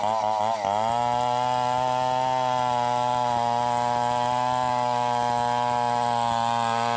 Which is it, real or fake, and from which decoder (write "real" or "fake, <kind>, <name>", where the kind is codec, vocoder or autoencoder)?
real